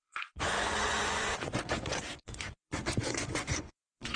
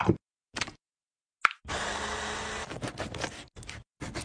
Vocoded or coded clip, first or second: first